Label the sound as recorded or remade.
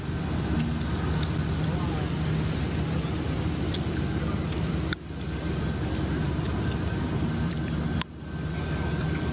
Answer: recorded